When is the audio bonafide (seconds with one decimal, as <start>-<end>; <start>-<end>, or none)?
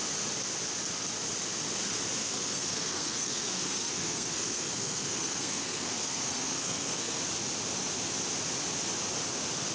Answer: 0.0-2.2; 7.2-9.7